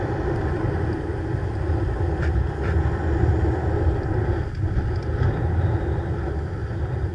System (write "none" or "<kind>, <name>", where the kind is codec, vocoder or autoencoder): none